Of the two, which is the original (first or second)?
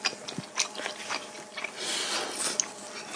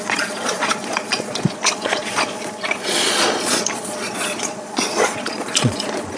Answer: first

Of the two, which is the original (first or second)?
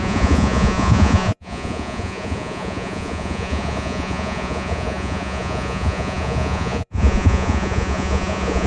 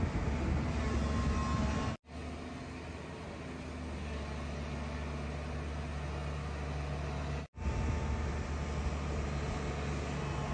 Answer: second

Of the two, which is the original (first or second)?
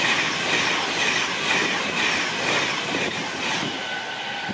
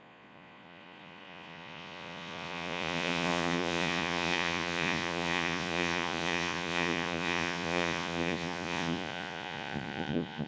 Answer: first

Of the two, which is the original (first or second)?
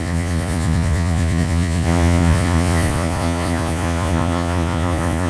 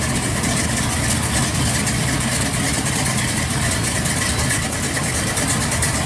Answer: second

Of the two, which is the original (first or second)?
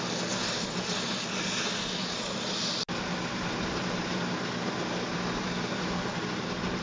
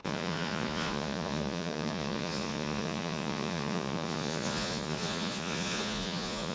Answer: first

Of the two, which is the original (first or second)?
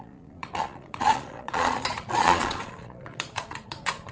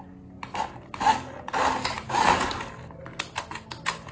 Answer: second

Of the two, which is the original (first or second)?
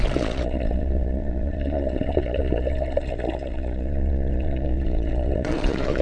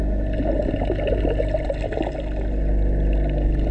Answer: second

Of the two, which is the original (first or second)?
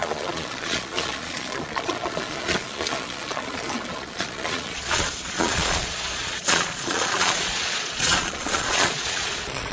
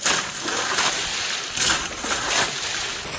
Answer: second